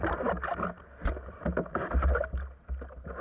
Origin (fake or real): real